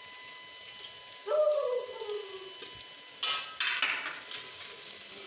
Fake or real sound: real